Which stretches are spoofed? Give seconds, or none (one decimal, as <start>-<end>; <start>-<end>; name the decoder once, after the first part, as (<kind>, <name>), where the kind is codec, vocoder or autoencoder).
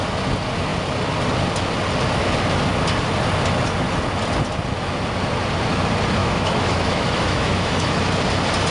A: 6.2-8.0 (autoencoder, DAC-VAE)